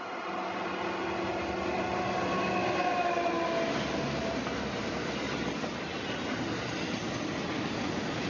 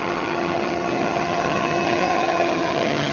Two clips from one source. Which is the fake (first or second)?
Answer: second